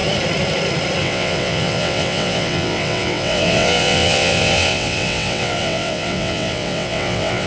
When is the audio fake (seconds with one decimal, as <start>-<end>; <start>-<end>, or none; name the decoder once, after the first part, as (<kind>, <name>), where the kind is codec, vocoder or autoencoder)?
1.0-7.5 (vocoder, WaveNeXt)